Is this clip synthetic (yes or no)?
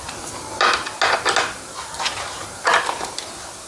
no